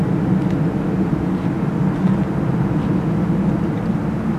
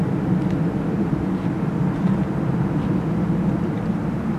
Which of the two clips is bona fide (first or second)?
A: first